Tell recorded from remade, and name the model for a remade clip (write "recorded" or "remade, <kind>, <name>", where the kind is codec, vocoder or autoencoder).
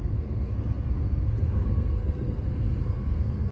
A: remade, codec, SNAC